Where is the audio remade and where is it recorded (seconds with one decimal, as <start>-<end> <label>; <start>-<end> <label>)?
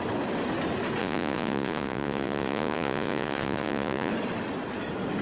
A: 0.0-1.0 recorded; 1.0-4.1 remade; 4.1-5.2 recorded